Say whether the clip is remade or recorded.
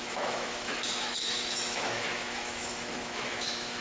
remade